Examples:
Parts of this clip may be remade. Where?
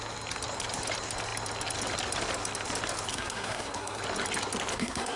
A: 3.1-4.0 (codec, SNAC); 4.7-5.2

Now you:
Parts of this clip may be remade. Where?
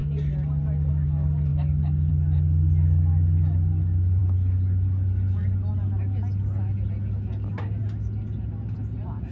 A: none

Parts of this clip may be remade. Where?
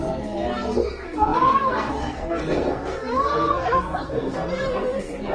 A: 0.0-5.3 (codec, SNAC)